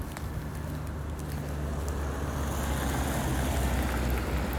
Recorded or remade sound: recorded